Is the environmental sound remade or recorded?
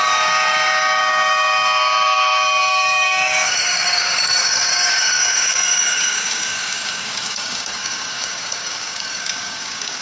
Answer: remade